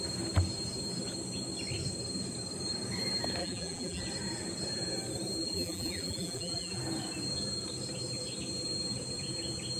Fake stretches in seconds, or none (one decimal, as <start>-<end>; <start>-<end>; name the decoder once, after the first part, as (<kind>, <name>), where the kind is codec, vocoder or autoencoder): 3.4-4.0 (vocoder, BigVGAN v2); 5.4-6.8